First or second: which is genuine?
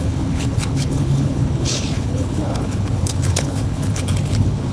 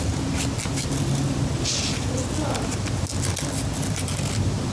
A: second